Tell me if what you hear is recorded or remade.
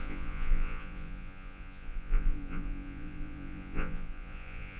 remade